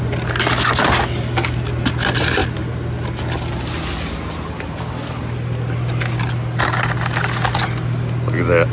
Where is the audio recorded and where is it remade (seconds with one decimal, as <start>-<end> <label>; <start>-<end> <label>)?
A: 0.0-8.7 recorded